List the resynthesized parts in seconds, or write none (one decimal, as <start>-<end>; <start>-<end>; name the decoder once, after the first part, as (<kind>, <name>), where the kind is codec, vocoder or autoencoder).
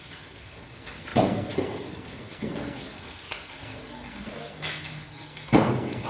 0.0-6.1 (codec, SNAC)